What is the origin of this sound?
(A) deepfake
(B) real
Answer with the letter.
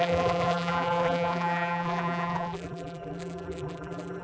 A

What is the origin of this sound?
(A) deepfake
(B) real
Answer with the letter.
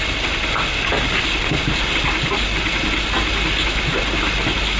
B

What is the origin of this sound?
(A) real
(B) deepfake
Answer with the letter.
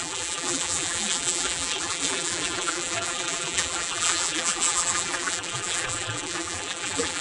B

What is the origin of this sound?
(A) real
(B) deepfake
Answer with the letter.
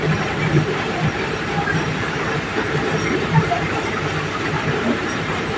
B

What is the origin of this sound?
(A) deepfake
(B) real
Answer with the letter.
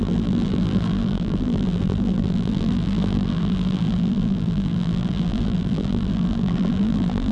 A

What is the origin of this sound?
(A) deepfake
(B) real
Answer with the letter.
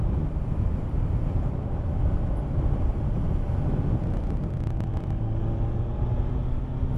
B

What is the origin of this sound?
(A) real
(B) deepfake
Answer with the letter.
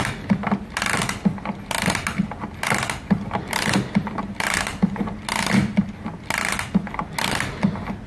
A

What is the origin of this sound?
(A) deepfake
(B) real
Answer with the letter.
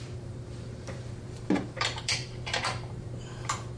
A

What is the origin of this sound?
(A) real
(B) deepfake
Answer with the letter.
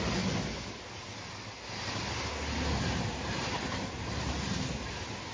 A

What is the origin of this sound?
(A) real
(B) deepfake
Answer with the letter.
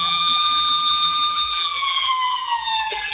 B